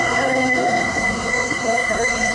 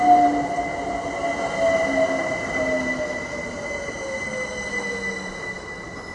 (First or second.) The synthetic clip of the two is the first